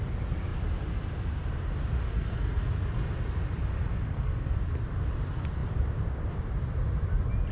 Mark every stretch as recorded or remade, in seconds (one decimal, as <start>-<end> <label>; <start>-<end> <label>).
0.0-2.0 recorded; 2.0-2.7 remade; 2.7-3.9 recorded; 3.9-4.6 remade; 4.6-7.5 recorded